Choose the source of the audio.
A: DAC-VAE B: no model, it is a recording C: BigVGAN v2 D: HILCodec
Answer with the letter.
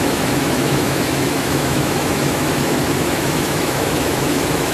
A